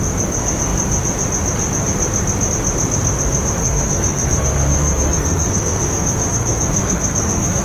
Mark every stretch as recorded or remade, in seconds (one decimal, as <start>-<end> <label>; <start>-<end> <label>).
0.0-3.6 recorded; 3.6-7.6 remade